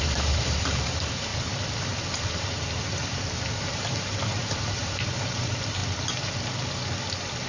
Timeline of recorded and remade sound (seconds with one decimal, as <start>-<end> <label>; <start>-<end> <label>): 0.0-1.3 remade; 1.3-3.5 recorded; 3.5-5.8 remade; 5.8-7.5 recorded